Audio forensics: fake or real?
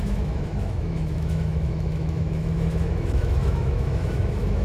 fake